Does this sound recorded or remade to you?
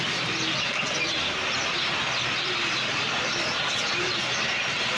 recorded